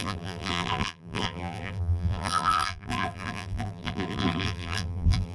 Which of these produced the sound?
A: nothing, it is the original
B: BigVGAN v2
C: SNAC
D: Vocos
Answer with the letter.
B